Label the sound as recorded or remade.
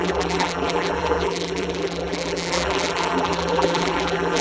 remade